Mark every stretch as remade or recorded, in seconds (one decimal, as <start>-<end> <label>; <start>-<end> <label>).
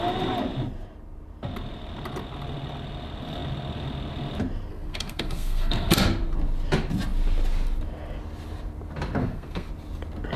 0.0-4.7 recorded; 4.7-5.9 remade; 5.9-9.2 recorded; 9.2-9.7 remade; 9.7-10.4 recorded